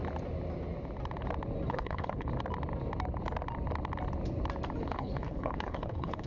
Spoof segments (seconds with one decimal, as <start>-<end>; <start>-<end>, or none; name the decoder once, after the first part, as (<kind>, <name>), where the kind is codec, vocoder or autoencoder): 1.7-2.3 (codec, HILCodec); 4.8-6.3